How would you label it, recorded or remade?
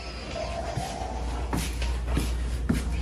recorded